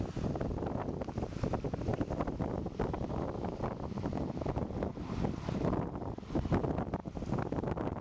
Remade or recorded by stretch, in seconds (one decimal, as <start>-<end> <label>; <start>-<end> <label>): 0.0-8.0 recorded